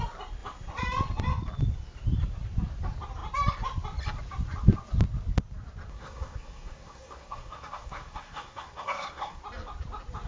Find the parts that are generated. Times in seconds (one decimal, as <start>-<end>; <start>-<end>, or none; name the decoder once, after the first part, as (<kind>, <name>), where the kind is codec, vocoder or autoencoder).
5.9-9.4 (codec, SNAC)